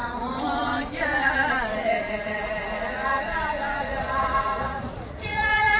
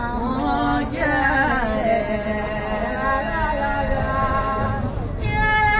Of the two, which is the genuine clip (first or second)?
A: second